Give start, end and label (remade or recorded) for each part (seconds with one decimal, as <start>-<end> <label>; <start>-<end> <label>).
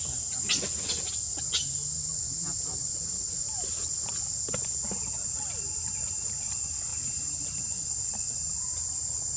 0.0-6.9 recorded; 6.9-7.6 remade; 7.6-9.4 recorded